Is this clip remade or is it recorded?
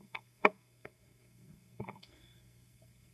remade